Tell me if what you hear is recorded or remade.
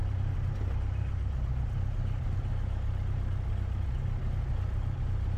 recorded